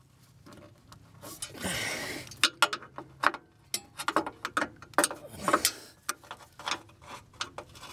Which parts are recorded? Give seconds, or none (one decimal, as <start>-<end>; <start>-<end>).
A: 0.0-7.9